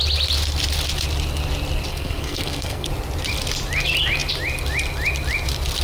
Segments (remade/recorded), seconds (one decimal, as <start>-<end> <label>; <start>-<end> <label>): 0.0-1.9 recorded; 1.9-2.9 remade; 2.9-5.8 recorded